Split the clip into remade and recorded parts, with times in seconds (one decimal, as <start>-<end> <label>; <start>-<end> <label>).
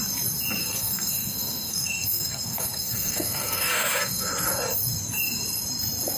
0.0-0.6 recorded; 0.6-4.3 remade; 4.3-6.2 recorded